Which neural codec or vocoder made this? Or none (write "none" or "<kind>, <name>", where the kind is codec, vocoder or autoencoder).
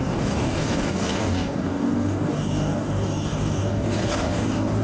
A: codec, DAC